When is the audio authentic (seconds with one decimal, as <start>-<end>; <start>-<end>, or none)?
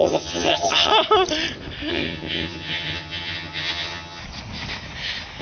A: 0.9-1.9; 4.2-5.4